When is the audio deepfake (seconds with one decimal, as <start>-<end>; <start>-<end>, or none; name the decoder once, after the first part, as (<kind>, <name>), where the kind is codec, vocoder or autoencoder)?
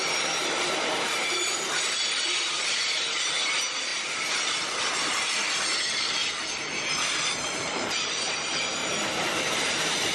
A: 0.0-6.2 (vocoder, BigVGAN v2); 6.8-8.8; 9.4-10.1